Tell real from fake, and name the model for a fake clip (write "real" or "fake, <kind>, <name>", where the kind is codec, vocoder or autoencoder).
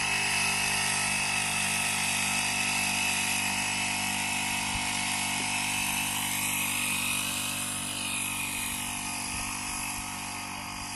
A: real